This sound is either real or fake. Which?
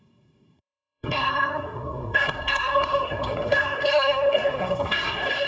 fake